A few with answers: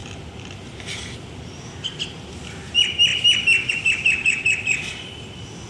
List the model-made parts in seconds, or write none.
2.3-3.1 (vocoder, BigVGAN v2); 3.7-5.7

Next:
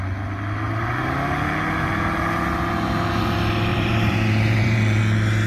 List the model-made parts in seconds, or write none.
3.7-5.0 (vocoder, BigVGAN v2)